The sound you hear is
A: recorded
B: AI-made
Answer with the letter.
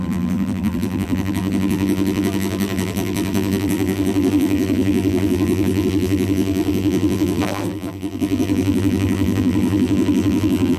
B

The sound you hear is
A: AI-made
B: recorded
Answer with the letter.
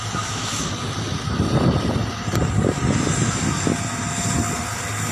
B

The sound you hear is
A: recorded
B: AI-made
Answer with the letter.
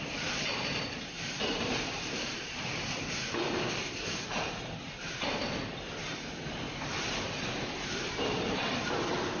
B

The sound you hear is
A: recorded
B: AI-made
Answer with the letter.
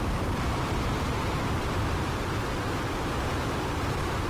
B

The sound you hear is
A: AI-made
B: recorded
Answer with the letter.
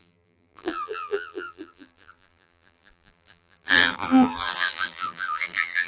A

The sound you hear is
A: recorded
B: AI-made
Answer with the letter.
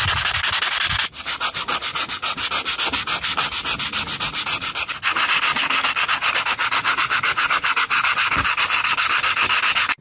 A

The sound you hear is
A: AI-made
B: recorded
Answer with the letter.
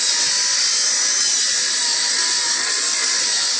B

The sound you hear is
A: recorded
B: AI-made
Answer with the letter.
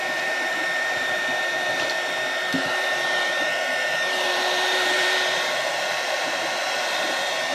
B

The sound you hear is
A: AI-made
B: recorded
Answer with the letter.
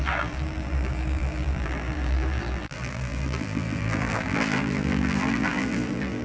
A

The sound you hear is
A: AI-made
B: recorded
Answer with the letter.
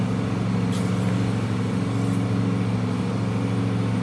B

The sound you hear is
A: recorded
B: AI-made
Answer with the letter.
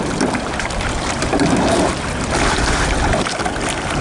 B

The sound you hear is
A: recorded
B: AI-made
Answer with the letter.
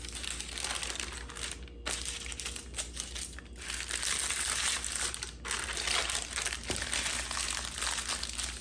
A